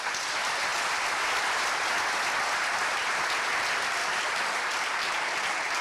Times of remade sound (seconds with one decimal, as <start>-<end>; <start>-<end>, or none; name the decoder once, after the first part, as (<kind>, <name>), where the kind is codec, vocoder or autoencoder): none